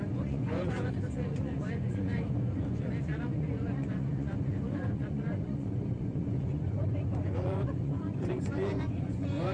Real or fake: fake